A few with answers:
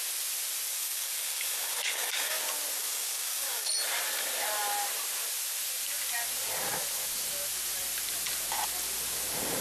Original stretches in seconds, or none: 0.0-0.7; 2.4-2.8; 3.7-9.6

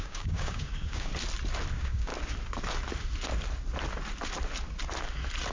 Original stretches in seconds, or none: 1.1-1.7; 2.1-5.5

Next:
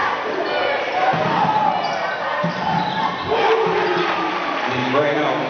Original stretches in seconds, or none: 0.0-4.8

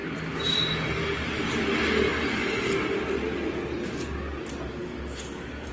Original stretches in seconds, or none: 0.0-4.8

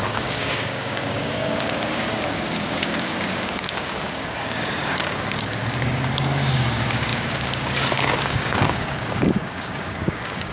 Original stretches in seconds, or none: none

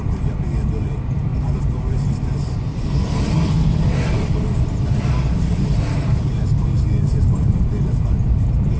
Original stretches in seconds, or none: 0.0-8.8